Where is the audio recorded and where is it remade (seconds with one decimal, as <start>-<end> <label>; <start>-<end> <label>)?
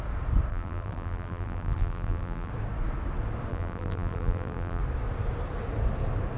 0.0-0.5 recorded; 0.5-2.5 remade; 2.5-3.5 recorded; 3.5-4.8 remade; 4.8-6.4 recorded